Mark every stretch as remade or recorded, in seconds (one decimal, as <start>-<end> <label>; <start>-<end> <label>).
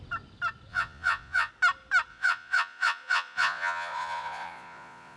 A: 0.0-0.7 recorded; 0.7-1.5 remade; 1.5-2.1 recorded; 2.1-5.2 remade